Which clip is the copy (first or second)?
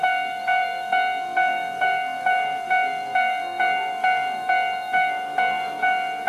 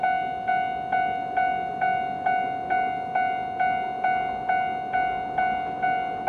first